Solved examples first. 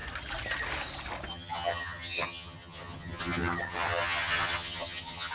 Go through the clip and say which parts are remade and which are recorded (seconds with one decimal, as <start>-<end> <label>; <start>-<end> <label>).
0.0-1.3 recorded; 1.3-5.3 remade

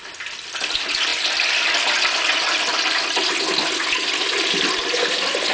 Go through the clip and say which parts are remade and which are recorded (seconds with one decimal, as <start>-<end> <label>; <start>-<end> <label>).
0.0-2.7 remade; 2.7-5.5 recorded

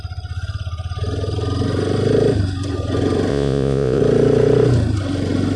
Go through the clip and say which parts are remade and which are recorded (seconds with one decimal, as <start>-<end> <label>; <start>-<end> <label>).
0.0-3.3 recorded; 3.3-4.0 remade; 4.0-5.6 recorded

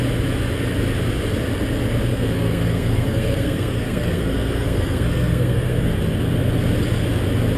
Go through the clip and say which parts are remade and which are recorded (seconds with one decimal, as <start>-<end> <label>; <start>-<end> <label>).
0.0-2.1 recorded; 2.1-5.9 remade; 5.9-7.6 recorded

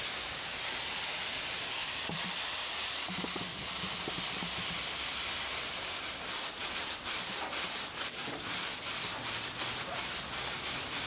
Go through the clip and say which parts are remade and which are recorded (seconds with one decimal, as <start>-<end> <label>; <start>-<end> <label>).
0.0-1.8 recorded; 1.8-6.1 remade; 6.1-6.6 recorded; 6.6-9.5 remade; 9.5-11.1 recorded

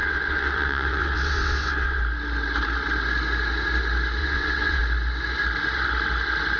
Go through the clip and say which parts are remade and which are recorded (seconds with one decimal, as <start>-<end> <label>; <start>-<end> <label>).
0.0-2.0 remade; 2.0-4.2 recorded; 4.2-4.8 remade; 4.8-6.6 recorded

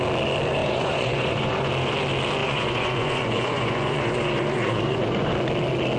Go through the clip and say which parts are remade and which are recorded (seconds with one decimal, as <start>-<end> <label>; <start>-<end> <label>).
0.0-0.6 recorded; 0.6-1.7 remade; 1.7-2.4 recorded; 2.4-5.3 remade; 5.3-6.0 recorded